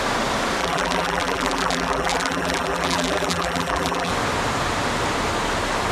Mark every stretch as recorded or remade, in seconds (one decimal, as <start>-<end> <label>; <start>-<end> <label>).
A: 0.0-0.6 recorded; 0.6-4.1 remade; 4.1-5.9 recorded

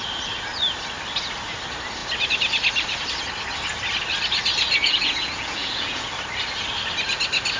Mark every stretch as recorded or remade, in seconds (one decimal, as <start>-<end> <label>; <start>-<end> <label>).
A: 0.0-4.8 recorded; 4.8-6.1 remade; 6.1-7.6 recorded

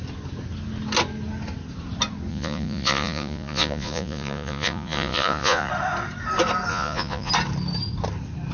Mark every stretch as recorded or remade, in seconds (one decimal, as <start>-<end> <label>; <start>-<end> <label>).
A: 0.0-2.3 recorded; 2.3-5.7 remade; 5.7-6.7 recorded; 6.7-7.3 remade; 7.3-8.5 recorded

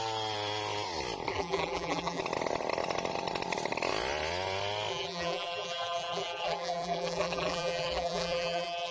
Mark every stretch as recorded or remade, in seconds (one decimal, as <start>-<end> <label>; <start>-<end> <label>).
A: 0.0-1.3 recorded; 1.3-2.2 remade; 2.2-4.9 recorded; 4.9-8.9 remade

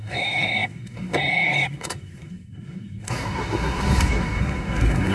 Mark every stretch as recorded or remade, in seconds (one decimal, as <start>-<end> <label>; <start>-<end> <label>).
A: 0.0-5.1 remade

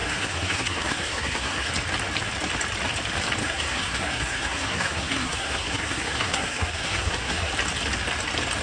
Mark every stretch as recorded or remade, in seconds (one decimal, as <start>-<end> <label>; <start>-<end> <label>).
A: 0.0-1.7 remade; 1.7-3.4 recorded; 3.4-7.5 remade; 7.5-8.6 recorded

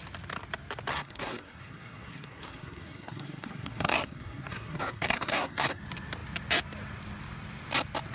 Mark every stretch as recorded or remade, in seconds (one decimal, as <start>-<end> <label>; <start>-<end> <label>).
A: 0.0-0.9 recorded; 0.9-5.8 remade; 5.8-8.1 recorded